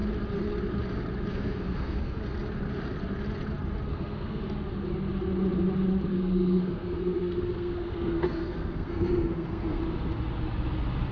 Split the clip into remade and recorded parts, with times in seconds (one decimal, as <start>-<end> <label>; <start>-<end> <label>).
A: 0.0-1.3 recorded; 1.3-2.2 remade; 2.2-3.9 recorded; 3.9-4.4 remade; 4.4-6.1 recorded; 6.1-9.8 remade; 9.8-11.1 recorded

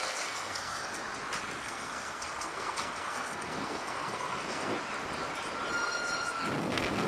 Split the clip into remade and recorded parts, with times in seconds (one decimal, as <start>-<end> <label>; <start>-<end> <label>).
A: 0.0-1.0 remade; 1.0-1.6 recorded; 1.6-4.7 remade; 4.7-6.6 recorded; 6.6-7.1 remade

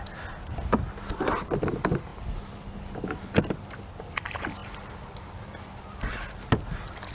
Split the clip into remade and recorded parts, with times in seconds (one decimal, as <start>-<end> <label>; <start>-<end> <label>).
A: 0.0-7.1 recorded

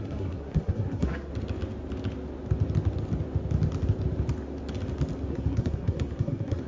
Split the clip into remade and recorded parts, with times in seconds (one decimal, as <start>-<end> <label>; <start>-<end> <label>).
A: 0.0-1.3 remade; 1.3-5.3 recorded; 5.3-6.7 remade

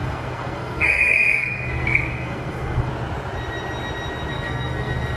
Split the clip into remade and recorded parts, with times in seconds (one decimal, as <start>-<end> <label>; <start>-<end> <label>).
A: 0.0-2.9 remade; 2.9-4.3 recorded; 4.3-5.2 remade

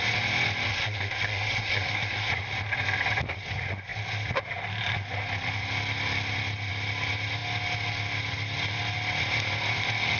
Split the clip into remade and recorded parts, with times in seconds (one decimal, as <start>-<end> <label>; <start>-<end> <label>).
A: 0.0-0.7 recorded; 0.7-2.3 remade; 2.3-10.2 recorded

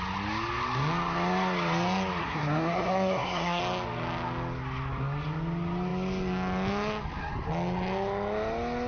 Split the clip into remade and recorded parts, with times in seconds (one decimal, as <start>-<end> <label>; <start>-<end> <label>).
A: 0.0-2.2 recorded; 2.2-3.6 remade; 3.6-8.9 recorded

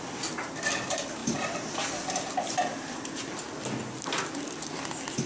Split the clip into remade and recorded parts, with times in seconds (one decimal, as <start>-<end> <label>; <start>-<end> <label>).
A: 0.0-5.3 recorded